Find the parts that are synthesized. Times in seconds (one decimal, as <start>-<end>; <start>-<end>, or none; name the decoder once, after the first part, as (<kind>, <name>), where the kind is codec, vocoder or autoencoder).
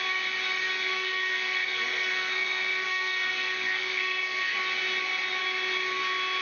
0.8-4.6 (codec, SNAC)